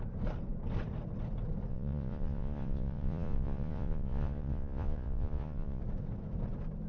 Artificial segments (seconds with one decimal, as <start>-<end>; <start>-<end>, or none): 1.7-5.8